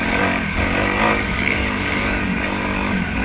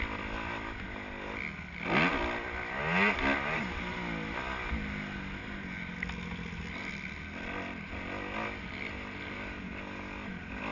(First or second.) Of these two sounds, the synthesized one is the first